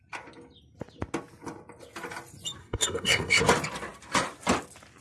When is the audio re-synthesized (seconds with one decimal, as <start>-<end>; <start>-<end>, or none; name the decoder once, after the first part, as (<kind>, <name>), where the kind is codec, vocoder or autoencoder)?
2.6-3.4 (codec, SNAC)